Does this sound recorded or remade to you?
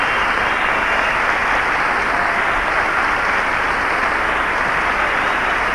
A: recorded